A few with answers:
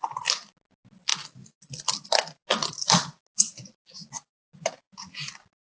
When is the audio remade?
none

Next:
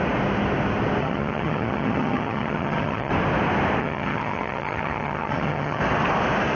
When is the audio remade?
1.0-3.1 (vocoder, HiFi-GAN); 3.8-5.8

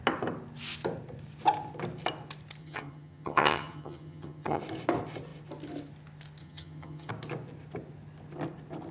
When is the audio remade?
2.6-4.6 (vocoder, HiFi-GAN); 6.4-7.1

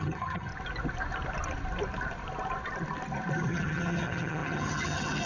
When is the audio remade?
0.0-0.5 (vocoder, HiFi-GAN); 3.5-5.3

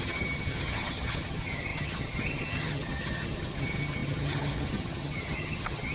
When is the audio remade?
0.0-5.9 (vocoder, HiFi-GAN)

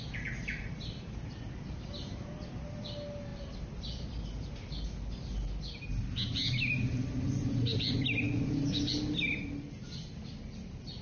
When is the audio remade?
none

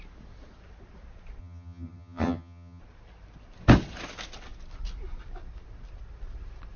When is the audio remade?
1.4-2.8 (vocoder, HiFi-GAN)